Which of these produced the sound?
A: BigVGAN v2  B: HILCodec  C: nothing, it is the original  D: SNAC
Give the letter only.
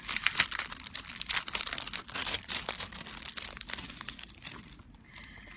C